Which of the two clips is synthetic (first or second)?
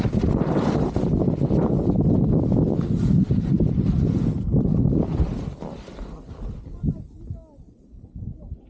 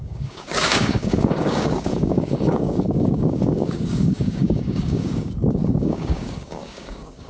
second